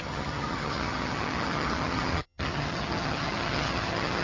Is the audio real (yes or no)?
no